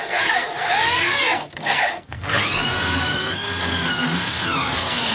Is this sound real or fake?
fake